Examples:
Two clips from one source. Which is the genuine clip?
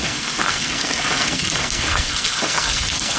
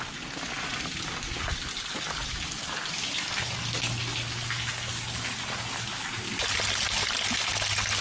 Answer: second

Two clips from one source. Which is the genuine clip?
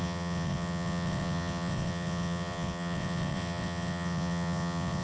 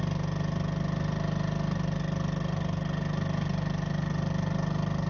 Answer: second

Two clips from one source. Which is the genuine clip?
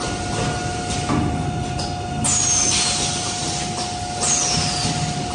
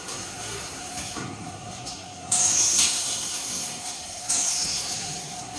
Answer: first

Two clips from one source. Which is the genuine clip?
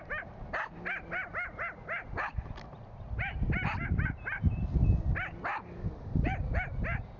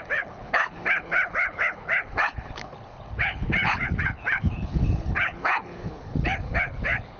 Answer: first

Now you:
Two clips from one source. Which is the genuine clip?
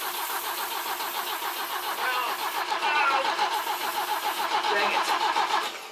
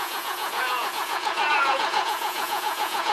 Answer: first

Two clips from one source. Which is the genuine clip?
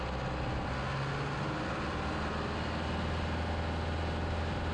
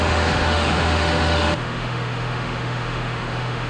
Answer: first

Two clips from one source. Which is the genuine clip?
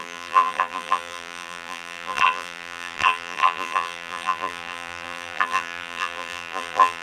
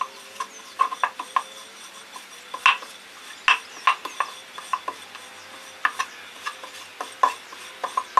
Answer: second